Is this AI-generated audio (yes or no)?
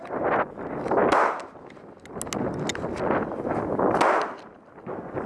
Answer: no